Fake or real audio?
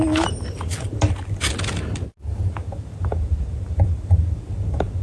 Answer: real